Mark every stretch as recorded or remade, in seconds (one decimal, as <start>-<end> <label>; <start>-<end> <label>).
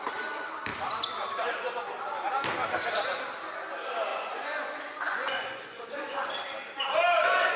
0.0-4.1 recorded; 4.1-6.3 remade; 6.3-7.6 recorded